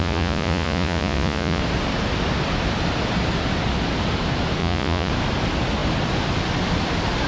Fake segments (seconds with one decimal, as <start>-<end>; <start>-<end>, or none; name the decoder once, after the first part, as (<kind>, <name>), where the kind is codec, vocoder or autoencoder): 0.0-1.6 (vocoder, Vocos); 4.6-5.1